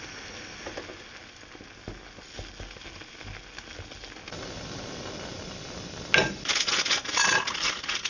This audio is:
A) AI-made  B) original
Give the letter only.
B